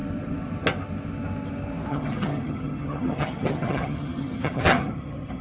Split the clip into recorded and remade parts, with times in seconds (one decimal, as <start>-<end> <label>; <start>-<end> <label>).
0.0-1.9 recorded; 1.9-5.4 remade